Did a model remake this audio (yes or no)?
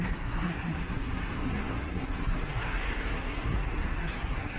yes